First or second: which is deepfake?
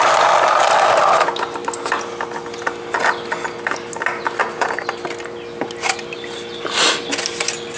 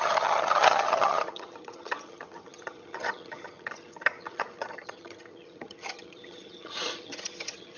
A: second